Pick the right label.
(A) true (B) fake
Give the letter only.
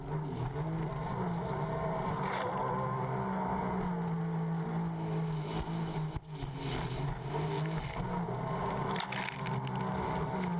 A